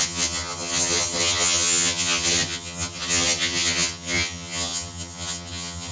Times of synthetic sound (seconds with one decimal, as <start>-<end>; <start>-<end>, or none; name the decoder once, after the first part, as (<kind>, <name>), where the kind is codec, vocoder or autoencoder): 0.0-5.9 (vocoder, HiFi-GAN)